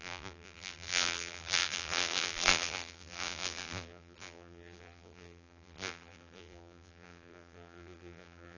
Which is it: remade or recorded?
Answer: remade